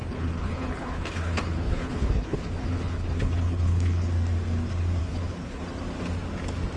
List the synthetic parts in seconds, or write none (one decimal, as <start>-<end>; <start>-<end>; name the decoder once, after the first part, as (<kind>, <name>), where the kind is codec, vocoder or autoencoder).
0.0-4.1 (codec, HILCodec); 5.0-5.6

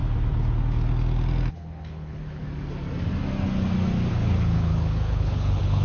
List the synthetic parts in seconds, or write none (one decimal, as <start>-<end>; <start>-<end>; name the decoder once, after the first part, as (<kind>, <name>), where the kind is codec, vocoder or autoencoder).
1.5-2.4 (codec, HILCodec); 4.1-5.8

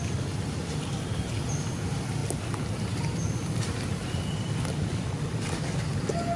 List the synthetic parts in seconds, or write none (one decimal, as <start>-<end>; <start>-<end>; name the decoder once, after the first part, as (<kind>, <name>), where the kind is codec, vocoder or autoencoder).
none

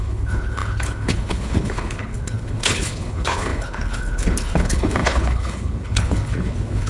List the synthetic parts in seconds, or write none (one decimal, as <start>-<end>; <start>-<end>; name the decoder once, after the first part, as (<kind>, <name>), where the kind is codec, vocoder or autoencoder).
0.0-6.9 (codec, HILCodec)

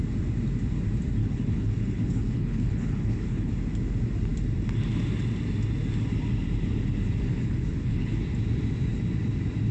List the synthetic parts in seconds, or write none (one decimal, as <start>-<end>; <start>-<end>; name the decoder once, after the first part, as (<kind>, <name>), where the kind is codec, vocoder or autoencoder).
1.2-3.5 (codec, HILCodec); 7.3-8.2

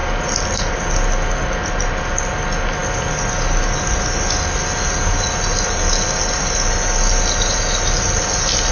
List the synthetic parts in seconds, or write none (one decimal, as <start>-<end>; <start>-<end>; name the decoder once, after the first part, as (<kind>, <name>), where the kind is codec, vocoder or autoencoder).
none